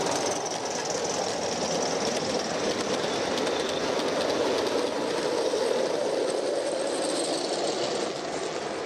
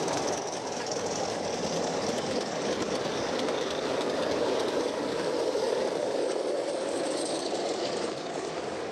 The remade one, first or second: second